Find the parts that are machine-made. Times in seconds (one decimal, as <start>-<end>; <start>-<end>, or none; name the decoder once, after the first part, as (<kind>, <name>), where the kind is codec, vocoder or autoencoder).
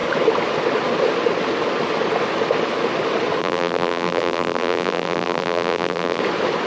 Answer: 3.4-6.2 (vocoder, BigVGAN v2)